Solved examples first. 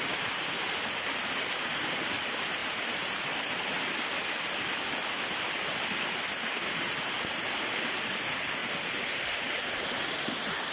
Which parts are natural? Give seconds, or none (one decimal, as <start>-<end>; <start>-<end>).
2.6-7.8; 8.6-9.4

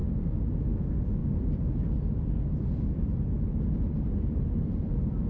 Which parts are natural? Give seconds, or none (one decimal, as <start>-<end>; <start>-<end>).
0.0-1.2; 4.4-5.3

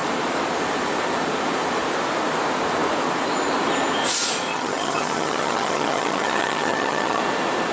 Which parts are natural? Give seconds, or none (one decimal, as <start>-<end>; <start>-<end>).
0.0-4.5; 7.2-7.7

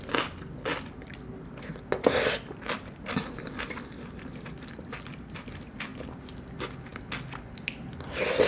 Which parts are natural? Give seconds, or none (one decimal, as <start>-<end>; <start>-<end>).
0.0-8.5